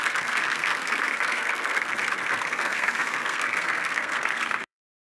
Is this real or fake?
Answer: fake